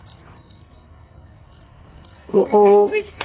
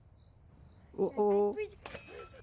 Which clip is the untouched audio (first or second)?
second